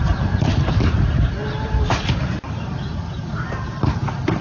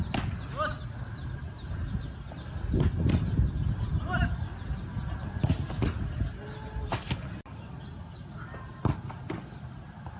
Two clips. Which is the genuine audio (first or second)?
second